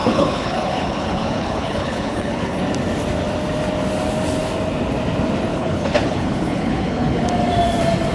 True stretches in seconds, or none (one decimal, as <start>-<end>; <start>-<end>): 2.6-5.5; 7.3-8.1